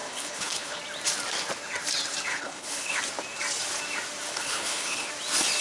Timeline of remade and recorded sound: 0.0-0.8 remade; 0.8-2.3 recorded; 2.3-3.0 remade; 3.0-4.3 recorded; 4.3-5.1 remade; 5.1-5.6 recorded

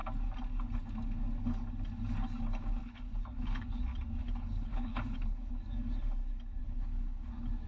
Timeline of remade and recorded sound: 0.0-2.8 recorded; 2.8-3.8 remade; 3.8-4.2 recorded; 4.2-5.5 remade; 5.5-6.6 recorded; 6.6-7.3 remade; 7.3-7.7 recorded

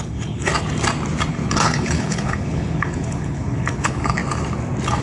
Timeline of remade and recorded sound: 0.0-0.5 remade; 0.5-1.3 recorded; 1.3-4.2 remade; 4.2-5.0 recorded

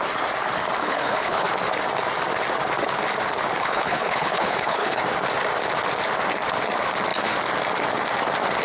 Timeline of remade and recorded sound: 0.0-0.8 recorded; 0.8-1.5 remade; 1.5-3.6 recorded; 3.6-5.0 remade; 5.0-8.6 recorded

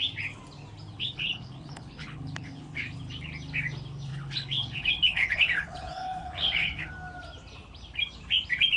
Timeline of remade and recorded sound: 0.0-0.9 recorded; 0.9-3.0 remade; 3.0-4.1 recorded; 4.1-6.9 remade; 6.9-8.8 recorded

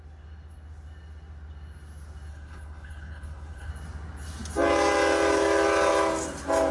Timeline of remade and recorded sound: 0.0-2.3 recorded; 2.3-3.7 remade; 3.7-6.7 recorded

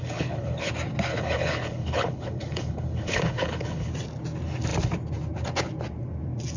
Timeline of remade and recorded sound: 0.0-0.7 remade; 0.7-1.1 recorded; 1.1-3.9 remade; 3.9-6.6 recorded

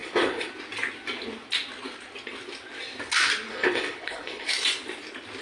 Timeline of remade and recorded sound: 0.0-0.5 remade; 0.5-3.5 recorded; 3.5-4.5 remade; 4.5-5.4 recorded